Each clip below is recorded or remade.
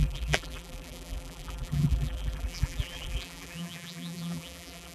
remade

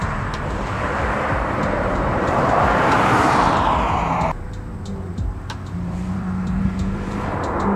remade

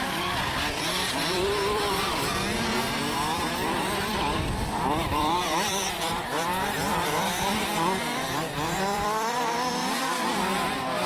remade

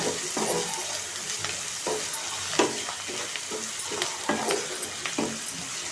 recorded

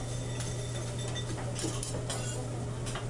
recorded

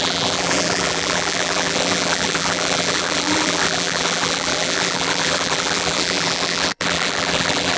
remade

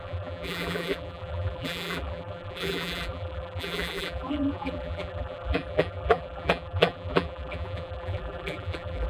remade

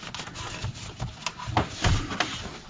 recorded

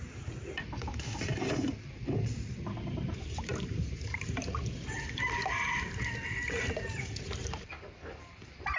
remade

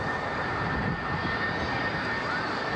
recorded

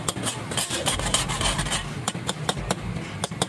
recorded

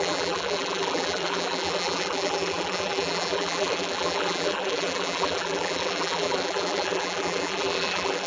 remade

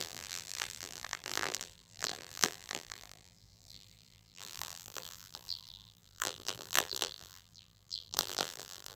remade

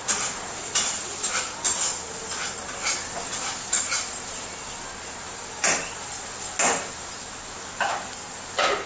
recorded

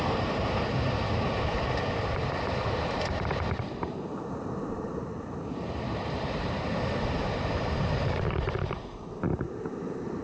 remade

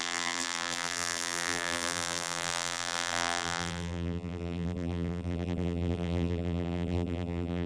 remade